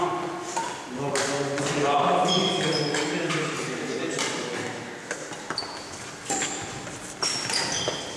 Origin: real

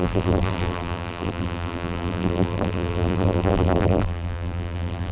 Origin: fake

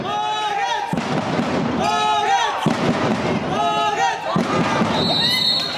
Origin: real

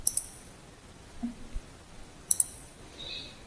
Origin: fake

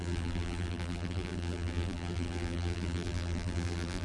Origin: fake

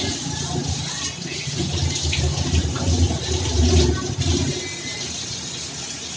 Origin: real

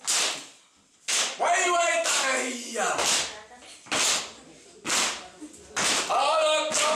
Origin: real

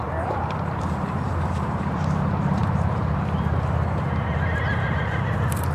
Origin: fake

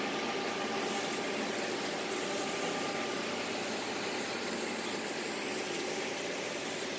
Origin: real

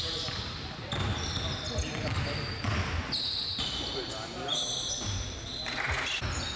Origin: real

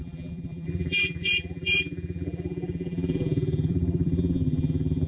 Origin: fake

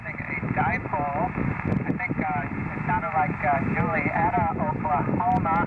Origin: real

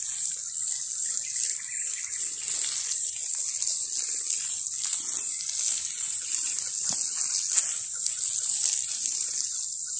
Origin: real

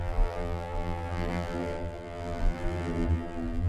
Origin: fake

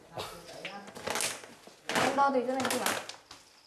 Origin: real